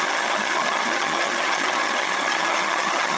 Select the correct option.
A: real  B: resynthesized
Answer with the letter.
B